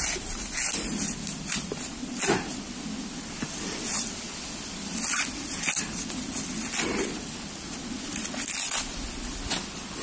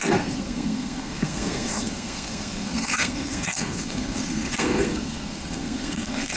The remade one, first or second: second